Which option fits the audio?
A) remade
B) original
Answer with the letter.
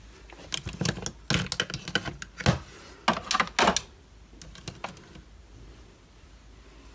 B